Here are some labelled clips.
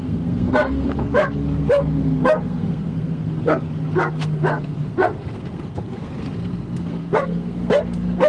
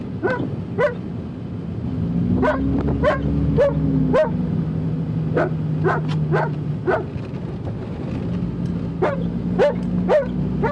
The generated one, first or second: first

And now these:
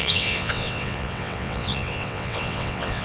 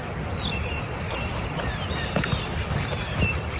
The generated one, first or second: first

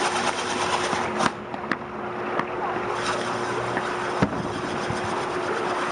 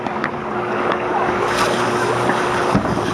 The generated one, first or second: second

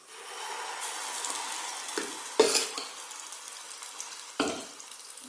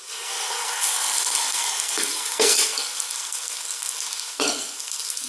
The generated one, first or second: second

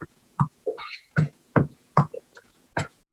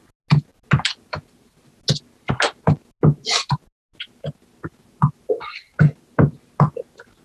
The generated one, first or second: first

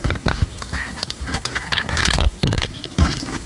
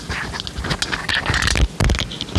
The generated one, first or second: first